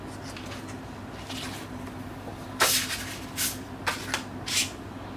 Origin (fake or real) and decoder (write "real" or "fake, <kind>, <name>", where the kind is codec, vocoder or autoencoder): real